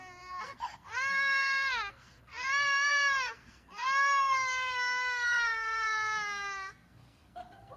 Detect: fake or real fake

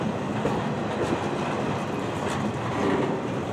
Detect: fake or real real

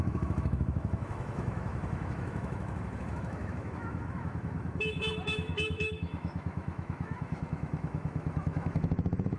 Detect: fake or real fake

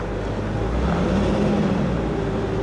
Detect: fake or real real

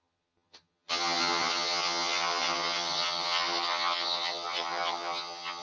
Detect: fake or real fake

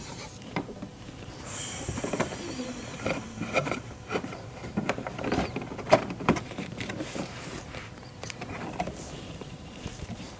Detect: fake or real fake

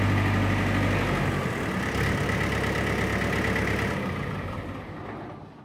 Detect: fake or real real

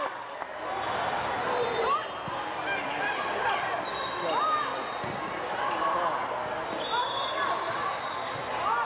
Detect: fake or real real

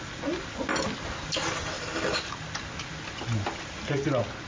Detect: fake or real real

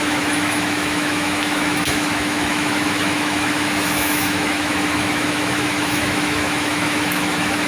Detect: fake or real fake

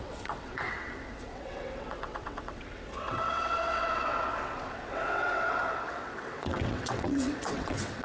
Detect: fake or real fake